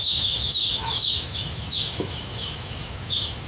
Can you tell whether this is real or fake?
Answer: fake